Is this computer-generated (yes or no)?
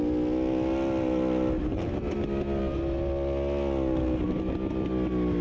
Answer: no